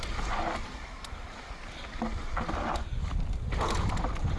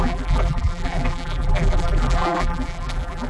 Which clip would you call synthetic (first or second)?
second